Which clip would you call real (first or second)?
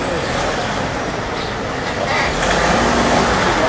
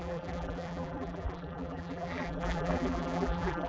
first